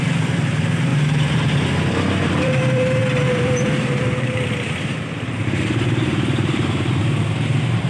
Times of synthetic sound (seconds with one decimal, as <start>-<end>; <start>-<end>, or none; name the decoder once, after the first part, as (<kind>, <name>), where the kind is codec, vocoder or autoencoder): 0.0-0.9 (vocoder, BigVGAN v2); 2.3-7.9